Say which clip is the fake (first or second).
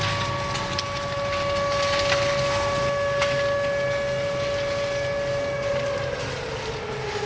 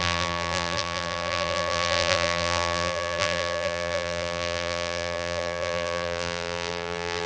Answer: second